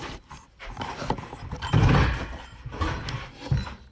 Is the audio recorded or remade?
recorded